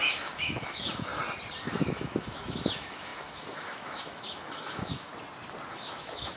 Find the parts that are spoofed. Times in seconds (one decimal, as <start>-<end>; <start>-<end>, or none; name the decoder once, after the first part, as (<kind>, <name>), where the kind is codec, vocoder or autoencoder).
0.0-1.1 (autoencoder, DAC-VAE); 1.6-5.1; 5.7-6.4